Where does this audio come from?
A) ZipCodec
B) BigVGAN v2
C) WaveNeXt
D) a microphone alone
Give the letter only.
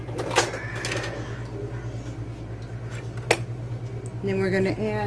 D